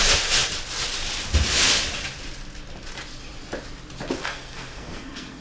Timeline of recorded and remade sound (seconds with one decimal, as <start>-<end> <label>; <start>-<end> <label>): 0.0-4.2 recorded; 4.2-5.4 remade